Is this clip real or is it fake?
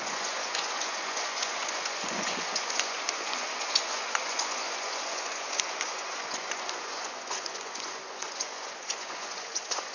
fake